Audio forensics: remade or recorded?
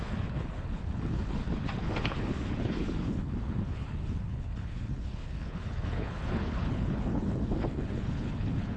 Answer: remade